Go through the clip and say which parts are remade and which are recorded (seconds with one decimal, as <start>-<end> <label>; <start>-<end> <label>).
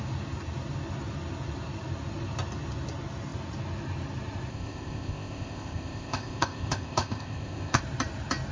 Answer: 0.0-4.5 recorded; 4.5-7.8 remade; 7.8-8.5 recorded